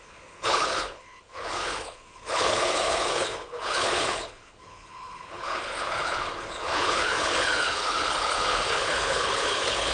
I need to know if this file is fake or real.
fake